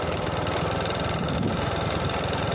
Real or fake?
real